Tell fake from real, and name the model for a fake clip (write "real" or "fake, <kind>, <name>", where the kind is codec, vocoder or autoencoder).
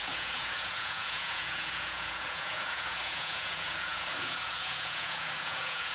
fake, vocoder, Vocos